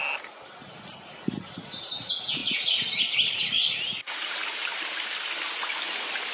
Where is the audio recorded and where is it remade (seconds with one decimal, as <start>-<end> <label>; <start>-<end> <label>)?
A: 0.0-6.3 recorded